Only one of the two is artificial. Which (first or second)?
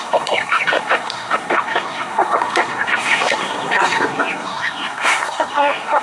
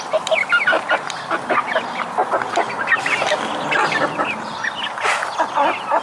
first